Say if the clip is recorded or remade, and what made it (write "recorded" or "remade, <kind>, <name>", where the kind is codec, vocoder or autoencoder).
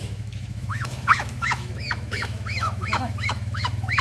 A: remade, autoencoder, DAC-VAE